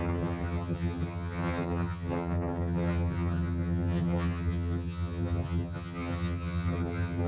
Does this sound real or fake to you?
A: fake